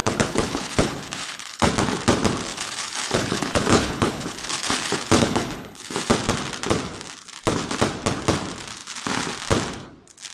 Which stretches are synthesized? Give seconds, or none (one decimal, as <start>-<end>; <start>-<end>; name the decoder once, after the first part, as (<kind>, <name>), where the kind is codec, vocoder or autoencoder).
0.0-1.7 (codec, HILCodec); 2.5-6.1